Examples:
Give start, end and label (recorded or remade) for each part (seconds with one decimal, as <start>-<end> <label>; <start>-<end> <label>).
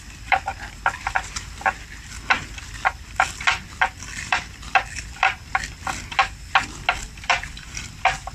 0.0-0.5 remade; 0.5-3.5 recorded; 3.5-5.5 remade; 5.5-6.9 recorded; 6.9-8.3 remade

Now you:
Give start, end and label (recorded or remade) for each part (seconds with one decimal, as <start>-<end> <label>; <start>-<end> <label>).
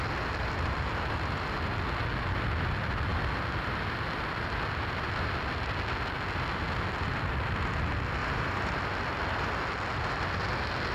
0.0-8.2 recorded; 8.2-8.7 remade; 8.7-10.9 recorded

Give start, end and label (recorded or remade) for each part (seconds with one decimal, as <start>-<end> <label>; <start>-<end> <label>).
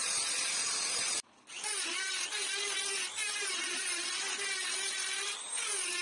0.0-3.2 recorded; 3.2-4.3 remade; 4.3-6.0 recorded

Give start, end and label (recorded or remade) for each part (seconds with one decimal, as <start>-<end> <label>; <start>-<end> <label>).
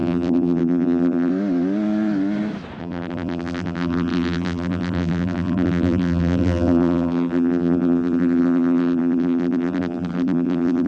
0.0-1.3 remade; 1.3-2.8 recorded; 2.8-10.9 remade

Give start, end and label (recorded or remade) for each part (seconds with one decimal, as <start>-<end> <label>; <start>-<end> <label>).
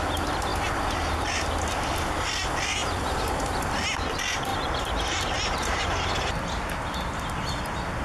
0.0-4.5 recorded; 4.5-6.7 remade; 6.7-8.0 recorded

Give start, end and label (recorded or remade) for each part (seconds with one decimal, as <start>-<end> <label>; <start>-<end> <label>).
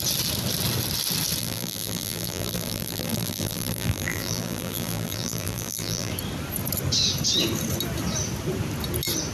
0.0-1.4 recorded; 1.4-6.1 remade; 6.1-9.3 recorded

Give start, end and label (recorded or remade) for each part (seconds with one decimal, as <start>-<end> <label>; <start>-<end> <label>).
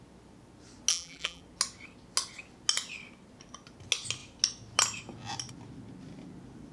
0.0-0.9 recorded; 0.9-1.4 remade; 1.4-6.7 recorded